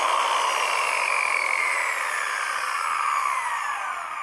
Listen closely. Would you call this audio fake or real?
real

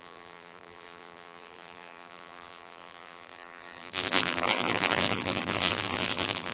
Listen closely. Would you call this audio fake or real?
fake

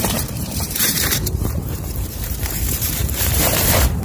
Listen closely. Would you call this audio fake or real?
fake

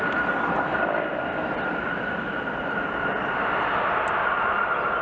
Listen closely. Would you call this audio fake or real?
real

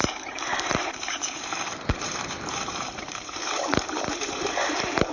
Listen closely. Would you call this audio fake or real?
fake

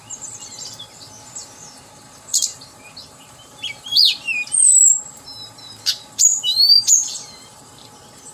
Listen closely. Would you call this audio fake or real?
fake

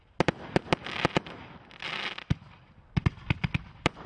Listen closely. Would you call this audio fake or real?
real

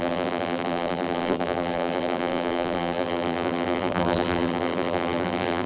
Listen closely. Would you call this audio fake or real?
fake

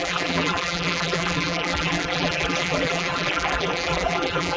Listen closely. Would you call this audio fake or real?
fake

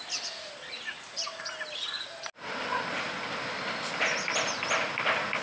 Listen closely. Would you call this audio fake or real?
real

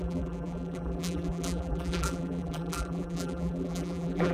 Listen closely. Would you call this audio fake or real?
fake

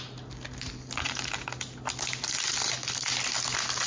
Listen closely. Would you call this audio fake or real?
real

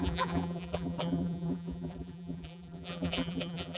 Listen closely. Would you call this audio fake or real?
fake